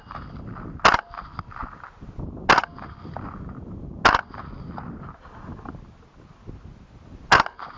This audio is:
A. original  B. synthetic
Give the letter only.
A